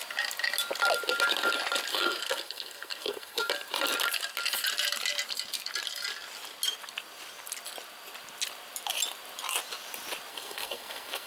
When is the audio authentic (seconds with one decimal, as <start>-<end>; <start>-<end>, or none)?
0.0-1.9; 3.5-10.3